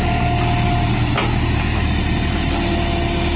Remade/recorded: recorded